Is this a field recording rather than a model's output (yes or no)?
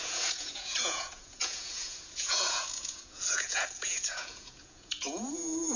no